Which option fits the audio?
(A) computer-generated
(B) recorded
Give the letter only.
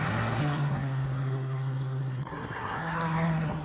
A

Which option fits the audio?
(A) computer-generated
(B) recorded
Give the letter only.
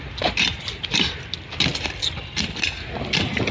B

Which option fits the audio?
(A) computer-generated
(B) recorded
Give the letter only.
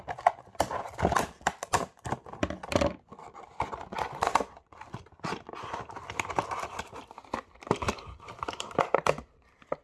B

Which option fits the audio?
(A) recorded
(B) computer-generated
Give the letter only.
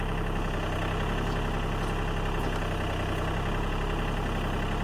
A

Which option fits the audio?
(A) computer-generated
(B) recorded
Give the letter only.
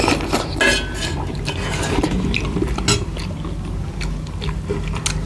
B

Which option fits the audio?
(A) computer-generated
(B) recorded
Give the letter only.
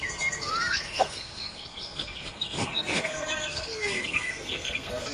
A